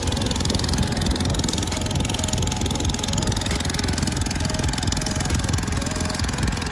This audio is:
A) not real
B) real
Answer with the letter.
B